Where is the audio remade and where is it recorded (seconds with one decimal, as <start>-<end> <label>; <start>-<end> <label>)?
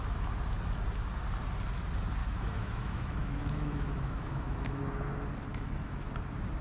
0.0-2.2 recorded; 2.2-4.8 remade; 4.8-5.5 recorded; 5.5-6.1 remade; 6.1-6.6 recorded